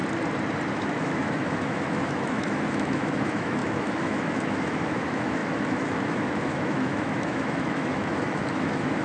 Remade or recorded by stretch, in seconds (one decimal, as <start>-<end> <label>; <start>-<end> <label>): 0.0-0.7 recorded; 0.7-9.0 remade